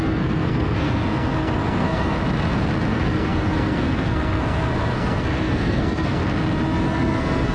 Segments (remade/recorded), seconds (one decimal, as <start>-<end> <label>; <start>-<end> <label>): 0.0-2.2 remade; 2.2-2.9 recorded; 2.9-6.2 remade; 6.2-6.8 recorded; 6.8-7.5 remade